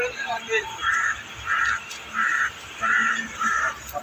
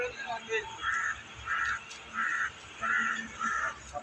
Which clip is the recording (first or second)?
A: second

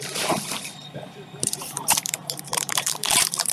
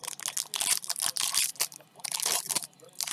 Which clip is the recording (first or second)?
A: second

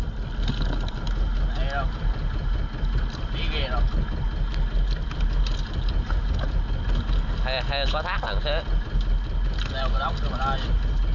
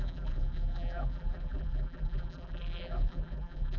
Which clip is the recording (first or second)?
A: first